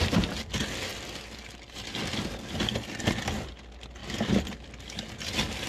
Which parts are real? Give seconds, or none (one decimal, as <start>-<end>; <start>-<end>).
0.0-5.7